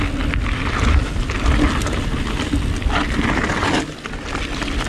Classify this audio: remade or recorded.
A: recorded